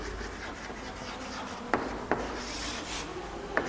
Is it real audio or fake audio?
real